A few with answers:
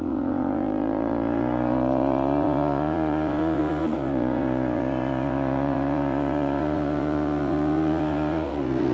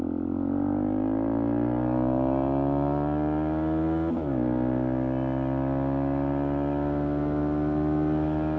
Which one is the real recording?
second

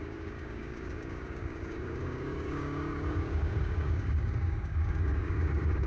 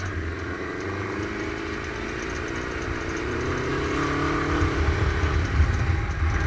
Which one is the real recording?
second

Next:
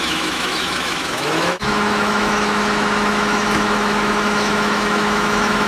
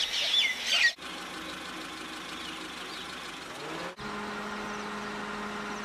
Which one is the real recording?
second